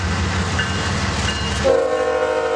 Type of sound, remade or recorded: recorded